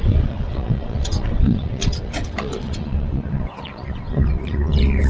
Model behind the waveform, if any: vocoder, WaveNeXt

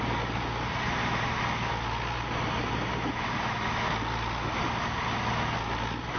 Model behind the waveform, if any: none